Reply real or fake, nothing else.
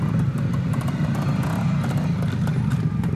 real